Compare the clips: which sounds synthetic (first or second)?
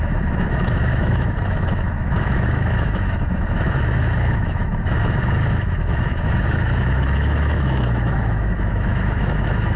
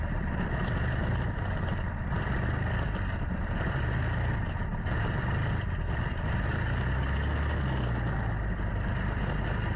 first